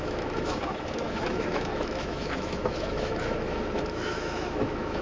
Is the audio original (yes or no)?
no